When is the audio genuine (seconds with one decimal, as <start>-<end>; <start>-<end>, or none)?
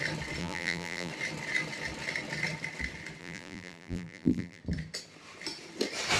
0.0-0.4; 1.1-3.2; 4.6-6.2